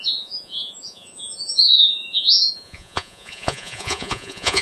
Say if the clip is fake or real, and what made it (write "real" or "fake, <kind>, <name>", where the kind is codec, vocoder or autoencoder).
fake, vocoder, Vocos